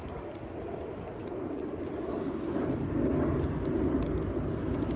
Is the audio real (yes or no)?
yes